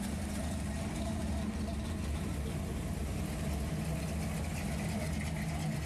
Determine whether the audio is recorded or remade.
recorded